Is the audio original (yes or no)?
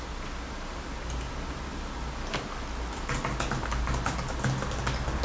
yes